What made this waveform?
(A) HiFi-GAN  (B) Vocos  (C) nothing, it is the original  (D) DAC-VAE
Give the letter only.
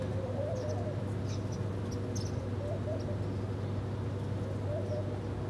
C